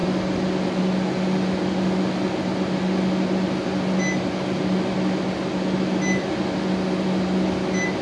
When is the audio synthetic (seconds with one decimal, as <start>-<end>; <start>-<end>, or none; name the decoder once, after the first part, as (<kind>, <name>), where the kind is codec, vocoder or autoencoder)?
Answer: none